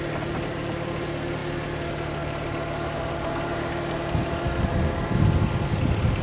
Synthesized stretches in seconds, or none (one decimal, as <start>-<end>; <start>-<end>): none